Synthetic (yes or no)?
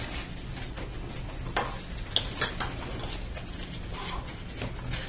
no